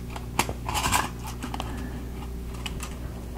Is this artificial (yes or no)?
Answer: no